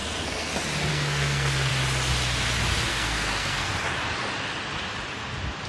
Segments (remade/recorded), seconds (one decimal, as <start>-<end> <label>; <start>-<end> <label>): 0.0-0.5 remade; 0.5-0.9 recorded; 0.9-1.7 remade; 1.7-2.9 recorded; 2.9-3.7 remade; 3.7-5.7 recorded